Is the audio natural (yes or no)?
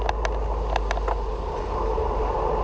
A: yes